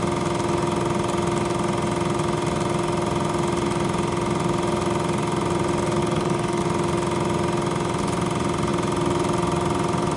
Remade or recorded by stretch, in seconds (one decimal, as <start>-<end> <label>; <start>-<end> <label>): 0.0-6.0 recorded; 6.0-6.6 remade; 6.6-10.2 recorded